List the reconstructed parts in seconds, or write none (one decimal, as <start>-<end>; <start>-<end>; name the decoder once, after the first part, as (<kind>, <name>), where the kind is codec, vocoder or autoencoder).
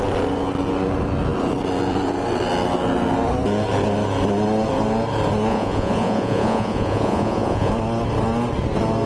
5.5-7.7 (vocoder, Vocos)